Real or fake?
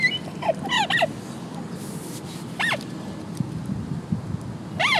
real